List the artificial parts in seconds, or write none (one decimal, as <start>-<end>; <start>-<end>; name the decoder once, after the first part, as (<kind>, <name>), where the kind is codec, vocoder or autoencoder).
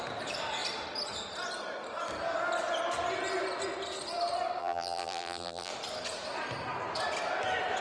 4.6-5.7 (vocoder, BigVGAN v2)